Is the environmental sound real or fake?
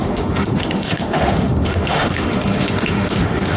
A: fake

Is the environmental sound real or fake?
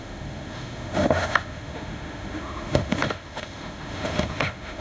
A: fake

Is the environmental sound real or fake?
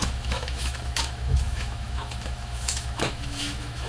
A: fake